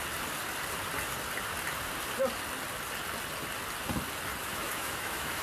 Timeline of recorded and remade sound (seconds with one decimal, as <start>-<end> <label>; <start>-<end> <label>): 0.0-4.4 recorded; 4.4-5.4 remade